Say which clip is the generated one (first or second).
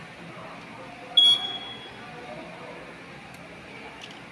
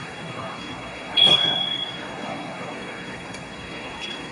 second